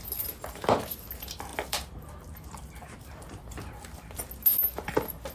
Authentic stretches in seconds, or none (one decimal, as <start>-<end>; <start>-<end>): 0.0-1.5; 4.3-5.3